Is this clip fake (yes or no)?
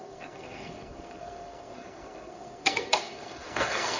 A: yes